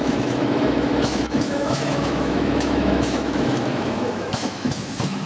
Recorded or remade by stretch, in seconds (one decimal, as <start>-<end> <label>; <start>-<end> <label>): 0.0-5.3 remade